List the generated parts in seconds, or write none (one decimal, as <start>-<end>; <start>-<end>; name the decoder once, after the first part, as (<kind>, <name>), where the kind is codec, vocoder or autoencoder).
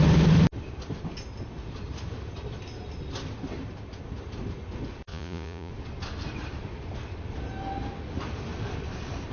5.1-5.7 (vocoder, Vocos)